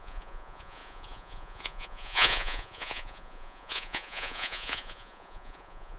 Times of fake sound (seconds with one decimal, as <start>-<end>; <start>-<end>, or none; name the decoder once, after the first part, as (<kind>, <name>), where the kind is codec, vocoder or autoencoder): 0.0-6.0 (vocoder, Vocos)